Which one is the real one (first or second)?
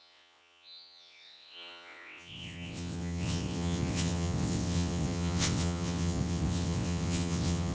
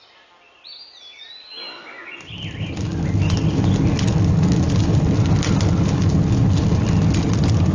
second